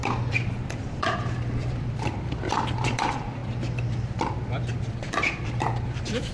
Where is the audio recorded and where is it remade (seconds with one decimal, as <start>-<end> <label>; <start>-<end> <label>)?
0.0-3.4 remade; 3.4-4.5 recorded; 4.5-6.3 remade